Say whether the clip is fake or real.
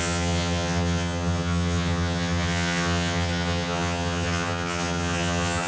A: fake